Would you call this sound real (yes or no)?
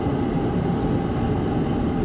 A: yes